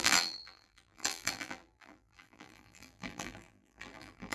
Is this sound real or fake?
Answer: fake